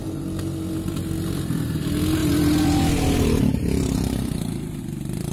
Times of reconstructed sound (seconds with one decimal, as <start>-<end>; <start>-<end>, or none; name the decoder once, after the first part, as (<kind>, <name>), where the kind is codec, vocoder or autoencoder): 2.2-4.8 (vocoder, BigVGAN v2)